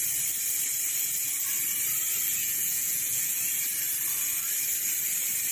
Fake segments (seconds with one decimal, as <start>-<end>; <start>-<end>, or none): 2.3-3.4